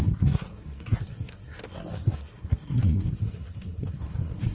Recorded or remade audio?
remade